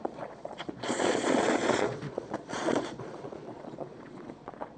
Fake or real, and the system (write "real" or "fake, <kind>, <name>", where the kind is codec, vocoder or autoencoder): fake, vocoder, Vocos